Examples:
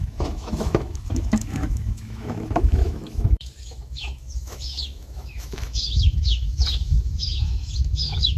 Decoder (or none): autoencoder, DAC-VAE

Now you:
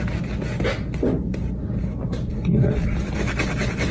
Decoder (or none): none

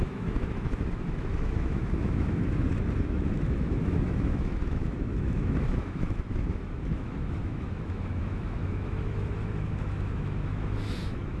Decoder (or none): autoencoder, DAC-VAE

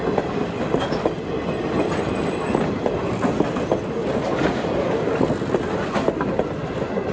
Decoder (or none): none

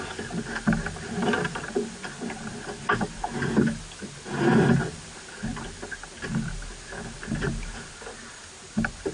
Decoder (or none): none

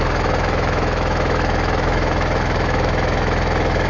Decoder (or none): autoencoder, DAC-VAE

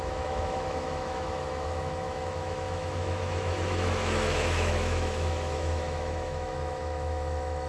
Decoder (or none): autoencoder, DAC-VAE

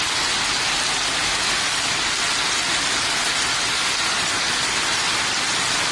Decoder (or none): none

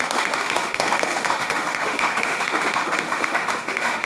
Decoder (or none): autoencoder, DAC-VAE